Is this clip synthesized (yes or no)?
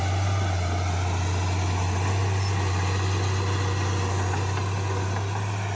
no